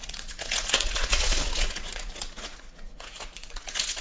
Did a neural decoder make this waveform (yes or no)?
yes